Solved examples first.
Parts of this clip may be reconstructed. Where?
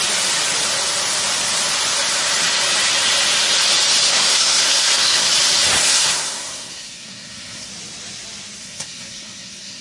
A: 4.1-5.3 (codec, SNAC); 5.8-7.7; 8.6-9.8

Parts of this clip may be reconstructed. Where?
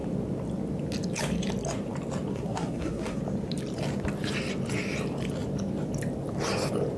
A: 2.3-3.2 (codec, SNAC)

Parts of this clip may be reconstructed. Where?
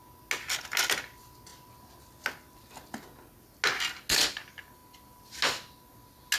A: none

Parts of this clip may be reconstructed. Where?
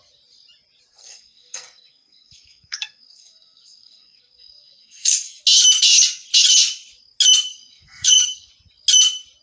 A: 0.9-5.4 (codec, SNAC); 7.5-8.5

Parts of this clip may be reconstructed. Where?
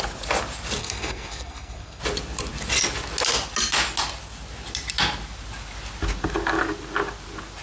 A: 0.8-2.0 (codec, SNAC)